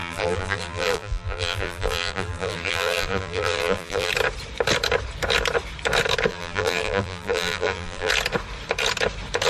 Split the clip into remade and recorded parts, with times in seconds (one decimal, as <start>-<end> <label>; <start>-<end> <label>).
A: 0.0-4.1 remade; 4.1-6.3 recorded; 6.3-8.1 remade; 8.1-9.5 recorded